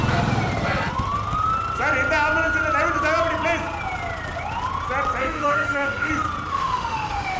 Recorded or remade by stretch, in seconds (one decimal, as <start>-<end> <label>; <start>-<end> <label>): 0.0-5.2 recorded; 5.2-6.1 remade; 6.1-6.5 recorded; 6.5-7.4 remade